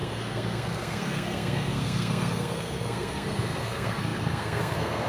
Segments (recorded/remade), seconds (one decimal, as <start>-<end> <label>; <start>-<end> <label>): 0.0-5.1 remade